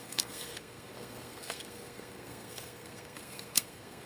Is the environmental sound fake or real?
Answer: fake